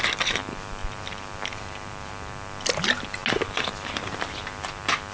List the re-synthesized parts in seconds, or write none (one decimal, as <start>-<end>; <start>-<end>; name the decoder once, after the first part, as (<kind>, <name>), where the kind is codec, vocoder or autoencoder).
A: none